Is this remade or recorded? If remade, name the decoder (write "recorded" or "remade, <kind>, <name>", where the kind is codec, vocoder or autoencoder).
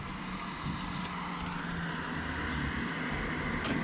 recorded